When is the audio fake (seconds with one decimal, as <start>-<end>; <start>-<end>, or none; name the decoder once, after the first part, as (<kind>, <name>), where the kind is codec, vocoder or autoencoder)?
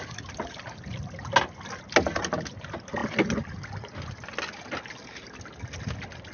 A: none